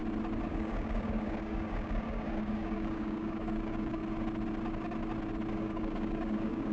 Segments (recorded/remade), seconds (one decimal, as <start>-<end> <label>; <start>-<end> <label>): 0.0-0.5 recorded; 0.5-4.0 remade; 4.0-5.5 recorded; 5.5-6.7 remade